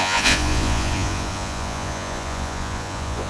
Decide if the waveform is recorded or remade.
remade